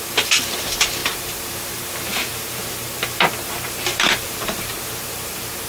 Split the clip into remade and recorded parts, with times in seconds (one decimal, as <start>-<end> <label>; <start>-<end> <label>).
0.0-5.7 remade